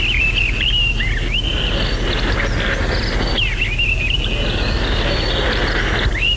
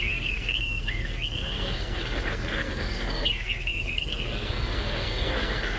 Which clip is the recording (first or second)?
first